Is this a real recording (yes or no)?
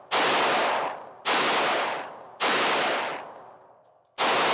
yes